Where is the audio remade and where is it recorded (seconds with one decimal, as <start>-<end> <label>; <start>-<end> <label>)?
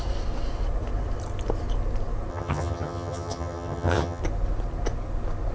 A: 0.0-2.3 recorded; 2.3-4.2 remade; 4.2-5.5 recorded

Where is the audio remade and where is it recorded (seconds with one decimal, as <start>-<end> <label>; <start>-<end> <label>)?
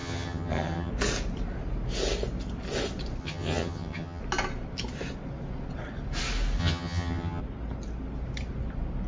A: 0.0-0.9 remade; 0.9-3.2 recorded; 3.2-4.2 remade; 4.2-6.6 recorded; 6.6-7.4 remade; 7.4-9.1 recorded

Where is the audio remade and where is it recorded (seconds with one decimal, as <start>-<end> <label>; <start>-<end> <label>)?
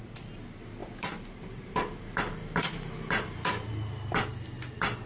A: 0.0-5.1 recorded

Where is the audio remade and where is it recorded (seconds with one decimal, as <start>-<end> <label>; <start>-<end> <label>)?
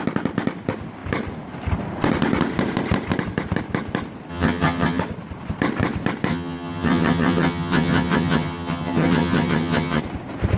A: 0.0-4.3 recorded; 4.3-5.0 remade; 5.0-6.3 recorded; 6.3-10.0 remade; 10.0-10.6 recorded